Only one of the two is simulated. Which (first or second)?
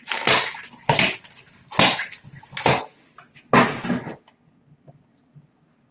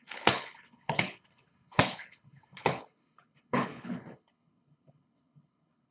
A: second